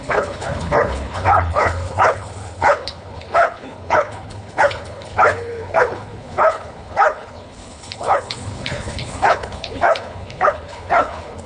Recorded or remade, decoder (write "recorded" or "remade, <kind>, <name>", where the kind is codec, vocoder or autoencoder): remade, codec, HILCodec